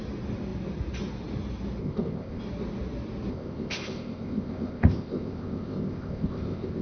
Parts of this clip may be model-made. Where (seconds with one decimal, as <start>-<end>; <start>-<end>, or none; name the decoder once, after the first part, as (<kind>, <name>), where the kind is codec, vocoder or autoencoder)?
1.8-2.4 (codec, ZipCodec); 3.3-6.8